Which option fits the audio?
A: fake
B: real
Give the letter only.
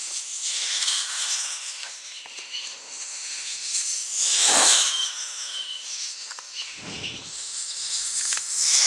A